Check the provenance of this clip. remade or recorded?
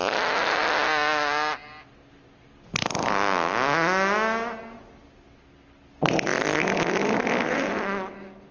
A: recorded